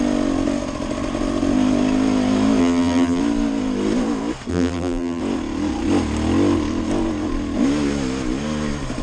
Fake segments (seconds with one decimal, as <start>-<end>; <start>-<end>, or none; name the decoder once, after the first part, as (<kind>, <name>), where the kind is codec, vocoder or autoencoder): 2.6-3.2 (vocoder, BigVGAN v2); 4.5-5.2